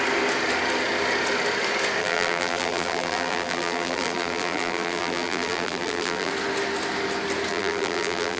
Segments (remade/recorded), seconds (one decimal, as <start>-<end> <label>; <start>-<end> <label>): 0.0-2.0 recorded; 2.0-6.3 remade; 6.3-7.5 recorded; 7.5-8.4 remade